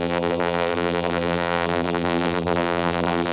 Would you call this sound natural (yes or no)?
no